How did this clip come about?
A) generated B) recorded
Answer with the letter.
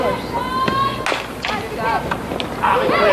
B